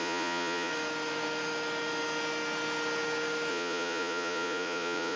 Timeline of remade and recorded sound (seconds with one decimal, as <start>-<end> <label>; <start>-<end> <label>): 0.0-0.7 remade; 0.7-3.5 recorded; 3.5-5.2 remade